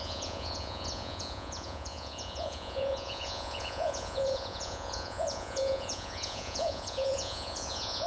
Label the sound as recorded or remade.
remade